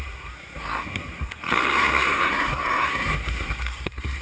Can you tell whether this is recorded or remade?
remade